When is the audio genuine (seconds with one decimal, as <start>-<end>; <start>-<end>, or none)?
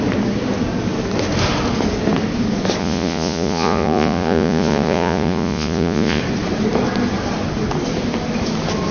0.0-2.8; 6.2-8.9